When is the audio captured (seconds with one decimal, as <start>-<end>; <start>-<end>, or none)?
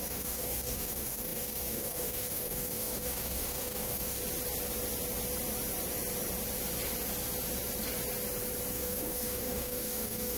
4.2-8.7